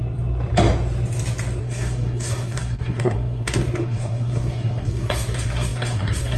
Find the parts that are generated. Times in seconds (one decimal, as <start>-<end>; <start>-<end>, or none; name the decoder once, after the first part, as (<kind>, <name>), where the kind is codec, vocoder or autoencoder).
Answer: 1.6-6.4 (codec, SNAC)

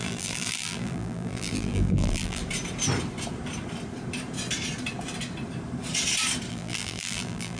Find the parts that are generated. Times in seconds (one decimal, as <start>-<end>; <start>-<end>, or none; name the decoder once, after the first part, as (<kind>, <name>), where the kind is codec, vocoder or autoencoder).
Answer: 0.0-2.4 (vocoder, BigVGAN v2); 6.5-7.6

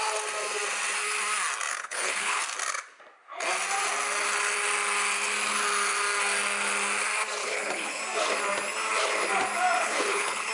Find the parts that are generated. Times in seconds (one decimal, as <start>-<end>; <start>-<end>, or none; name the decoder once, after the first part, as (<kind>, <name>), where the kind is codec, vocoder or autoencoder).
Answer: 1.7-2.4 (codec, HILCodec); 7.4-8.0; 9.8-10.5

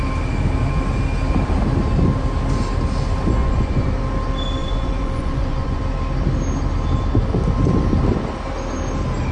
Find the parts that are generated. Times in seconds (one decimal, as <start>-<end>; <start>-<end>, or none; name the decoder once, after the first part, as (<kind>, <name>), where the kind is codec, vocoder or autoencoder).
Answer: 3.4-3.9 (vocoder, Vocos); 4.6-5.8